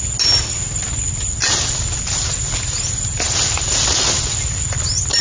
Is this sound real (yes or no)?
yes